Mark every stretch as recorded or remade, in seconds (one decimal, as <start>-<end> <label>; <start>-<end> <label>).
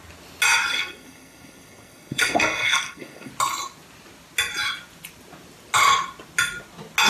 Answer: 0.0-0.7 recorded; 0.7-3.3 remade; 3.3-7.1 recorded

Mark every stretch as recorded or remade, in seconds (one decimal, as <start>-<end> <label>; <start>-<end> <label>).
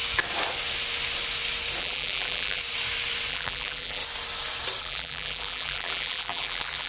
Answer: 0.0-1.8 recorded; 1.8-2.6 remade; 2.6-3.3 recorded; 3.3-4.0 remade; 4.0-4.8 recorded; 4.8-6.9 remade